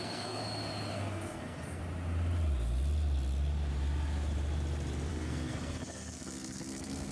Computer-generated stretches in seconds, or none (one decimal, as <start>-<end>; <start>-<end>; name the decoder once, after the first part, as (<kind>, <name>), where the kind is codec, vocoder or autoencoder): 0.0-0.4 (codec, SNAC); 0.9-1.8; 5.1-7.1